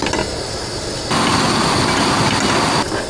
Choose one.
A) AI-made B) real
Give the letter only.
B